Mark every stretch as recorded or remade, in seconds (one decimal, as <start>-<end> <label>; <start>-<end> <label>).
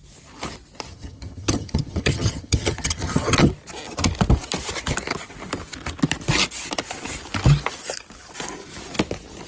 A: 0.0-0.9 recorded; 0.9-3.5 remade; 3.5-9.5 recorded